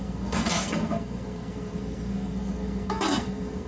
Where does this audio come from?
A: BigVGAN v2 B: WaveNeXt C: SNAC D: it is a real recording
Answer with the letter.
C